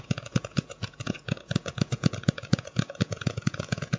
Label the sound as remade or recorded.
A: remade